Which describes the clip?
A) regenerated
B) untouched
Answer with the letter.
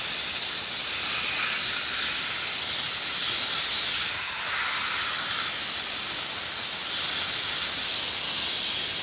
B